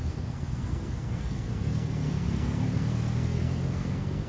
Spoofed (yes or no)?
yes